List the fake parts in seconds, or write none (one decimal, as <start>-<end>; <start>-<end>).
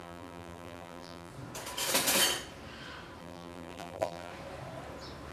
0.0-1.3; 3.2-4.3